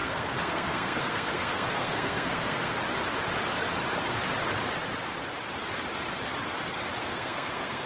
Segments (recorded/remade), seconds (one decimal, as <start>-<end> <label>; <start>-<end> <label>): 0.0-2.8 remade; 2.8-7.0 recorded; 7.0-7.9 remade